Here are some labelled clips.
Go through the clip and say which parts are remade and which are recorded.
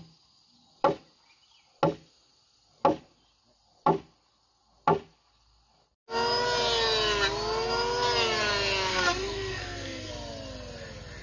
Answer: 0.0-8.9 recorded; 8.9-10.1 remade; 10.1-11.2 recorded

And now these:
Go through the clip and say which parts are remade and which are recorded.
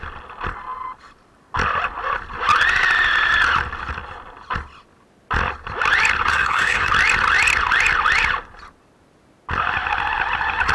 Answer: 0.0-6.3 recorded; 6.3-6.9 remade; 6.9-10.7 recorded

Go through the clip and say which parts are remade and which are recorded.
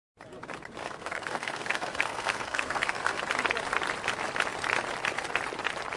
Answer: 0.0-0.8 recorded; 0.8-3.2 remade; 3.2-6.0 recorded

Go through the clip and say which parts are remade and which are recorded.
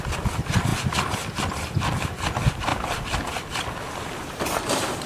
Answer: 0.0-5.1 recorded